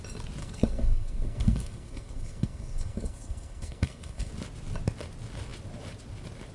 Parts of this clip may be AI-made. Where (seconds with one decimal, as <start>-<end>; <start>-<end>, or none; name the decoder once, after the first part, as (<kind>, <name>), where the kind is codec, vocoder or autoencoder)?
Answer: 0.4-4.3 (codec, SNAC)